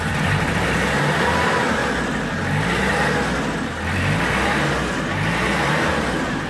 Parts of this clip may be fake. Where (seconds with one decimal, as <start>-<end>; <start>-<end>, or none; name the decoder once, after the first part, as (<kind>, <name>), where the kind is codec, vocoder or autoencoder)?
0.0-1.8 (vocoder, BigVGAN v2); 5.7-6.5